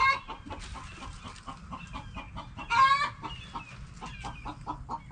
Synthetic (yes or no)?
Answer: no